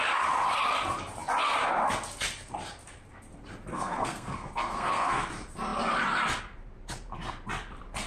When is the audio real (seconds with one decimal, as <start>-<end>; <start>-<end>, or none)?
0.0-3.7; 5.3-8.1